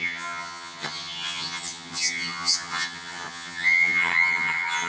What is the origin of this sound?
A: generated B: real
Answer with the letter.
A